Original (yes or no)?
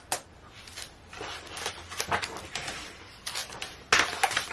no